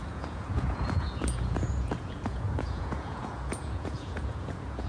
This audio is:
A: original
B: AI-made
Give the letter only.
B